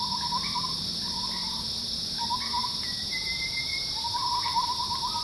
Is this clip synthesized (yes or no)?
yes